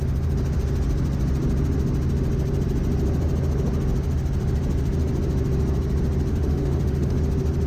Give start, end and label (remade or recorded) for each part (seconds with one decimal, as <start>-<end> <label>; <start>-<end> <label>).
0.0-6.3 recorded; 6.3-7.2 remade; 7.2-7.7 recorded